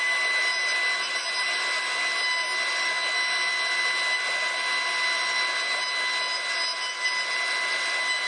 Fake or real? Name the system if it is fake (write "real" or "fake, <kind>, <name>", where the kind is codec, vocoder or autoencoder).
real